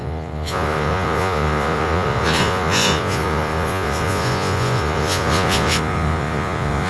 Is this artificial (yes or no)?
yes